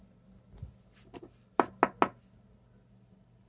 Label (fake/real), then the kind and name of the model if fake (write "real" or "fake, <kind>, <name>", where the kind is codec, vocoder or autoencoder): real